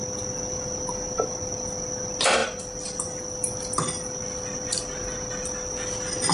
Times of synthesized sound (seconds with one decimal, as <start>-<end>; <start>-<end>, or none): none